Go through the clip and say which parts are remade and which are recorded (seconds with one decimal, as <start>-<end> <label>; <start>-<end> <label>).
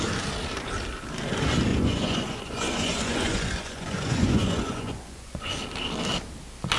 0.0-1.7 recorded; 1.7-5.5 remade; 5.5-6.8 recorded